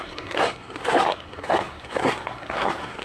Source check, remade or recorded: remade